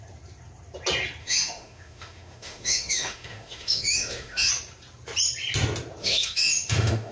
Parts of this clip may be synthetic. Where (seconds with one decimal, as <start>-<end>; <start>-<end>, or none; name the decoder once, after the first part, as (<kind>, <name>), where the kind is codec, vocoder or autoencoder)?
1.2-4.5 (autoencoder, DAC-VAE); 6.0-7.1